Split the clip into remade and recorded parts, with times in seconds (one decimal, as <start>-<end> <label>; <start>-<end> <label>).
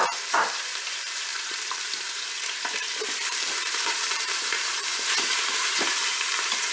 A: 0.0-6.7 remade